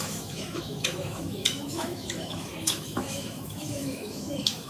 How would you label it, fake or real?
fake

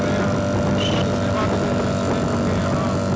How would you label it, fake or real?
real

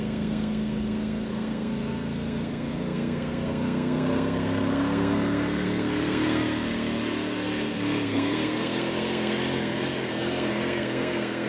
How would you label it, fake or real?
fake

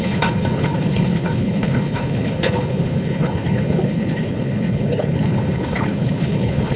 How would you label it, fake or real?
fake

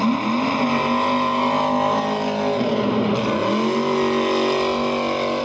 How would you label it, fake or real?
real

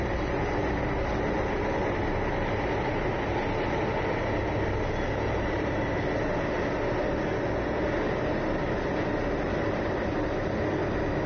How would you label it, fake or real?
real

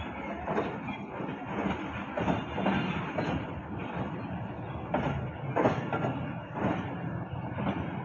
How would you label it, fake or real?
real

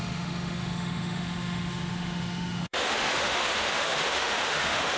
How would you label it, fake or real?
fake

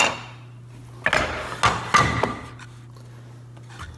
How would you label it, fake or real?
real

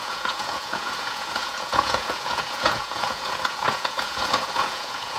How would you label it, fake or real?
fake